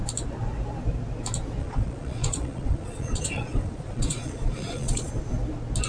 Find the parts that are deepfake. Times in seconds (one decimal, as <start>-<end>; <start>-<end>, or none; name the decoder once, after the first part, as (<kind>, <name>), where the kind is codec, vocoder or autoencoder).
1.6-5.1 (vocoder, Vocos)